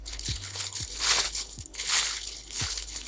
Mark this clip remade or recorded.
remade